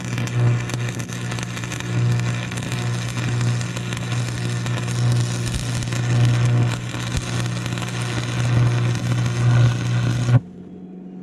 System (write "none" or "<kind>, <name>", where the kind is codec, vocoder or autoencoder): none